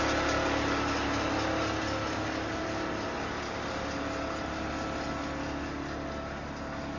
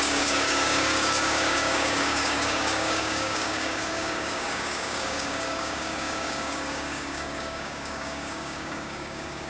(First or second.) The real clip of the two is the first